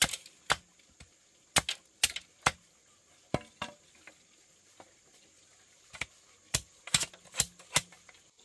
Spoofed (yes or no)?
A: no